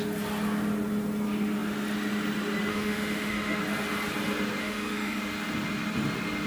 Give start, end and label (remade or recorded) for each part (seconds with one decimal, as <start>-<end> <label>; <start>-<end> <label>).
0.0-2.7 recorded; 2.7-3.6 remade; 3.6-4.6 recorded; 4.6-5.2 remade; 5.2-6.5 recorded